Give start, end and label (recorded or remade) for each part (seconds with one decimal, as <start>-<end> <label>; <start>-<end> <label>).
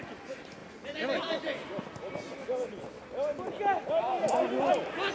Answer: 0.0-5.1 recorded